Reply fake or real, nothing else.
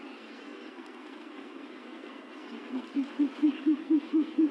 fake